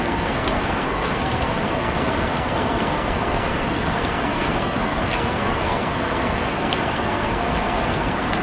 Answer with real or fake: fake